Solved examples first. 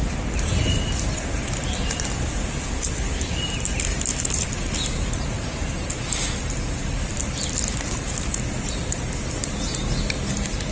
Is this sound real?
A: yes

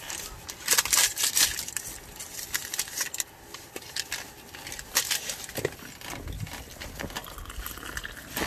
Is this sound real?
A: yes